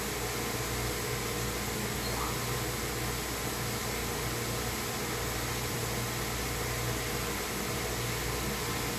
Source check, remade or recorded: recorded